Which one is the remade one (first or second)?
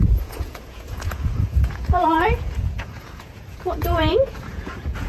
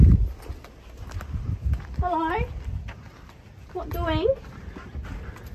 first